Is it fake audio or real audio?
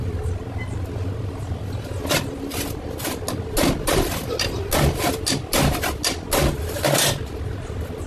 real